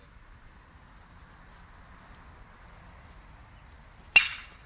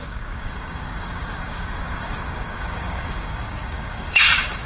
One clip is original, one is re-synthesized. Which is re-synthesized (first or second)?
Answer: second